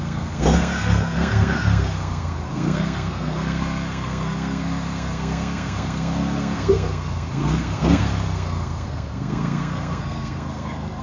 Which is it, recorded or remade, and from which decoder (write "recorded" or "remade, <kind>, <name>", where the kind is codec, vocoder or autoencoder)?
remade, codec, SNAC